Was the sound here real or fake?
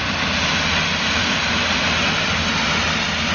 real